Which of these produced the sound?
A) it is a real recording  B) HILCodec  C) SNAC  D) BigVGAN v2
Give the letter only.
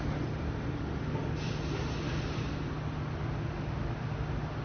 A